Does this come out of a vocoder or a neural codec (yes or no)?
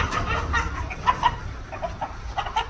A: no